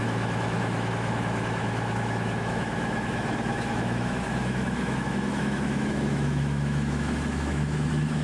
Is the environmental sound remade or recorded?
remade